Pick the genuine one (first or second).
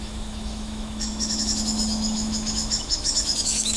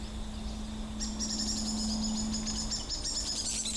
second